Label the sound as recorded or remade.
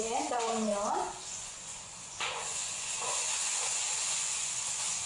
remade